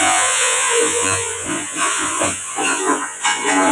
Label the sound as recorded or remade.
remade